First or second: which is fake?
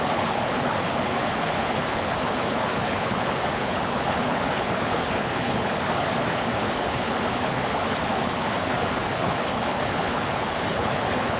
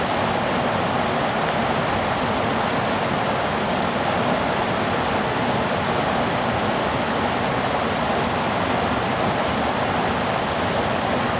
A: first